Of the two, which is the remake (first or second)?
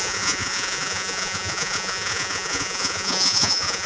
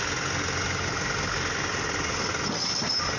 first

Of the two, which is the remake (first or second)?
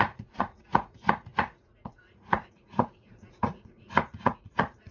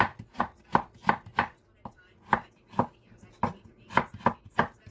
first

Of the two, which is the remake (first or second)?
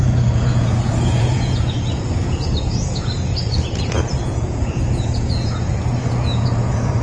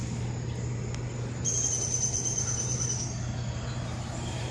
first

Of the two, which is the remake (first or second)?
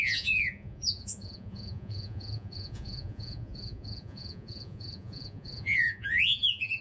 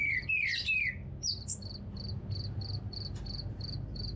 first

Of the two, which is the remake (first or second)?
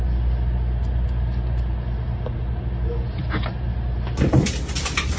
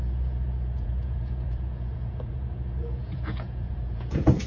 second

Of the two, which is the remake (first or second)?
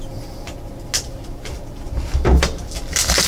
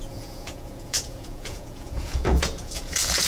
second